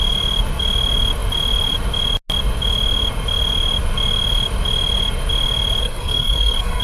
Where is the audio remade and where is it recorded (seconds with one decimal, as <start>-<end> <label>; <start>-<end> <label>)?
0.0-5.8 recorded; 5.8-6.8 remade